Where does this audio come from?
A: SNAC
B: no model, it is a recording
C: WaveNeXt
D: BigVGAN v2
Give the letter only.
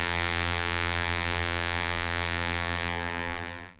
D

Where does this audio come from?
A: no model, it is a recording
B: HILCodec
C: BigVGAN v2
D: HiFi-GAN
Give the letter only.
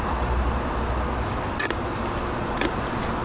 A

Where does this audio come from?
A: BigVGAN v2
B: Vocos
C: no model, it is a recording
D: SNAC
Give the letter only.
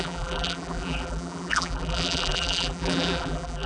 A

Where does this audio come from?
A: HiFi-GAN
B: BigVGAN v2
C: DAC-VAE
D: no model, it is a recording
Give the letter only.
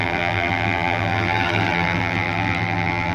B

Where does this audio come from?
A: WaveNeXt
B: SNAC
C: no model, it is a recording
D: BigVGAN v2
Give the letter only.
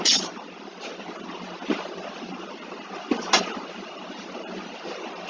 C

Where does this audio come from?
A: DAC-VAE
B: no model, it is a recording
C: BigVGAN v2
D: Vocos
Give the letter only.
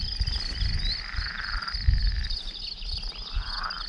B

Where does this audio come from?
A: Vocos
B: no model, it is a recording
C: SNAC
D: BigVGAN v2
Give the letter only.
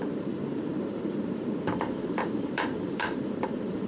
D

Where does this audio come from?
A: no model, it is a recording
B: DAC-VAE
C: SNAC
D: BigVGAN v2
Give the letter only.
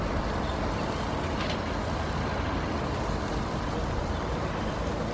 A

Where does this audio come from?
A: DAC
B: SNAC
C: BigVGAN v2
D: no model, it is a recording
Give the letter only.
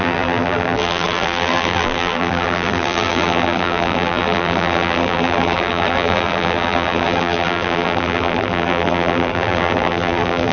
C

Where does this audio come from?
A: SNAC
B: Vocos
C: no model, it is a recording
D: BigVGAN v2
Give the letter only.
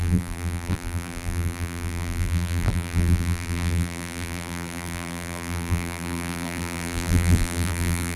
D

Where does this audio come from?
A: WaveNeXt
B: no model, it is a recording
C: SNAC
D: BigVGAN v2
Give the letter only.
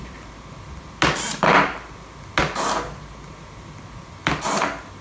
B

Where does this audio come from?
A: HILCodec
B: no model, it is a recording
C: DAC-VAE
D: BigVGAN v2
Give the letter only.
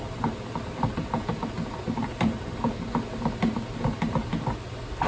B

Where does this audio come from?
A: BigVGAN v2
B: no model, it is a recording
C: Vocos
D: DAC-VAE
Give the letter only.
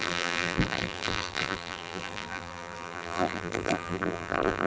A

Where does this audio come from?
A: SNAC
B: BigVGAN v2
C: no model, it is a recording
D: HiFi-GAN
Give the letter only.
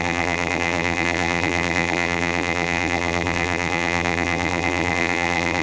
B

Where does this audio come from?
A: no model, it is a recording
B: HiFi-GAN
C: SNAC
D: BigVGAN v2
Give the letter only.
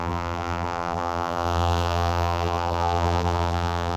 D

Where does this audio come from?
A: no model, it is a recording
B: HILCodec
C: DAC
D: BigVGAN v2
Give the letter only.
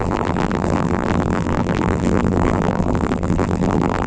D